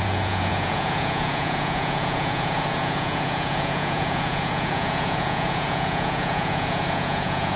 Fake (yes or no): yes